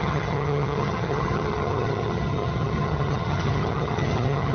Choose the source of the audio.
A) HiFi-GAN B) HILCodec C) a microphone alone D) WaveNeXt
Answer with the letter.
A